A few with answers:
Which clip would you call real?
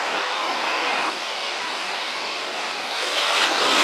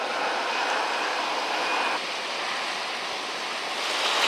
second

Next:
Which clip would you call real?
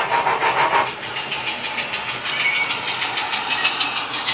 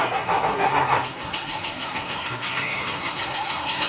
first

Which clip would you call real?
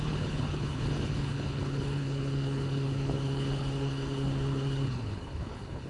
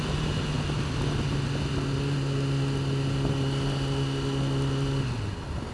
second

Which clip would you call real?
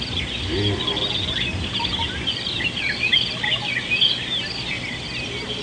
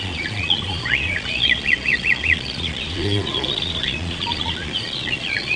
first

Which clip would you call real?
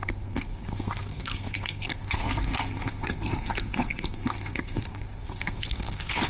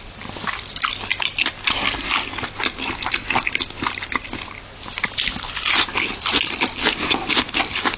second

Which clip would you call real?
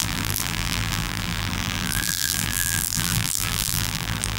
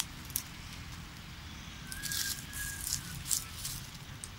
second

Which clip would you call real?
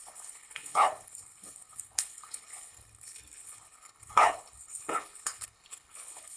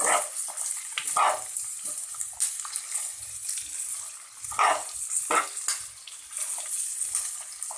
second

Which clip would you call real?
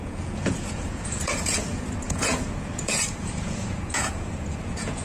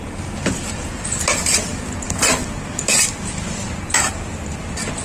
second